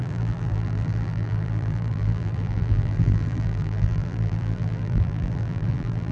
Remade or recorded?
remade